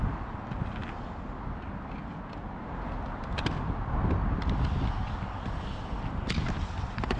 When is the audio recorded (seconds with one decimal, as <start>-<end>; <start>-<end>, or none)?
0.0-7.2